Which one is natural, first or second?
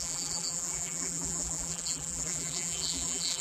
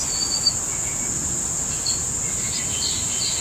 second